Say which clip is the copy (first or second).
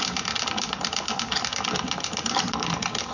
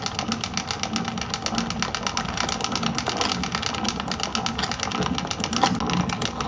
first